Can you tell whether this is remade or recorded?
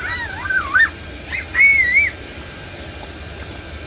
recorded